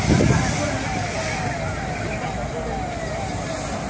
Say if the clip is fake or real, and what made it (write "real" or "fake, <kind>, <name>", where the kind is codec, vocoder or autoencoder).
real